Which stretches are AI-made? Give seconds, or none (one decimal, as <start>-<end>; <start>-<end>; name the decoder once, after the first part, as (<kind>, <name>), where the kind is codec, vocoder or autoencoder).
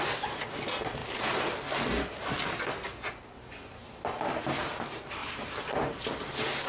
none